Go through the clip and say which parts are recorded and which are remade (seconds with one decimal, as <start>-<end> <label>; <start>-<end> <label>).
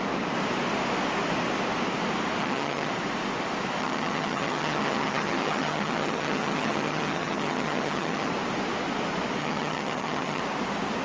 0.0-2.4 recorded; 2.4-2.9 remade; 2.9-3.8 recorded; 3.8-8.3 remade; 8.3-9.4 recorded; 9.4-10.4 remade; 10.4-11.0 recorded